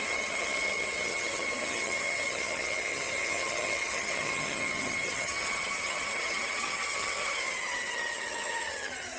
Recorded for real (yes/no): no